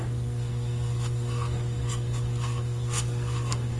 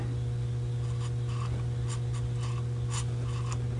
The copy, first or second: first